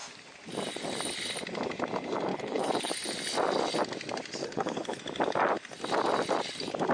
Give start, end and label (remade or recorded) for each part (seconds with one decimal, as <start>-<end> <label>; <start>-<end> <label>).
0.0-2.3 recorded; 2.3-2.9 remade; 2.9-4.4 recorded; 4.4-5.0 remade; 5.0-6.9 recorded